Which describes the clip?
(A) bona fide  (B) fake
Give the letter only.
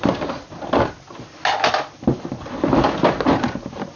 A